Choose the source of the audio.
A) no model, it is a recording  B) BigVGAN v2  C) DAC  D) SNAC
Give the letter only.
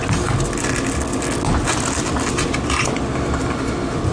A